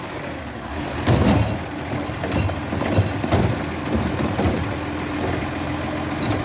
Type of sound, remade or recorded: recorded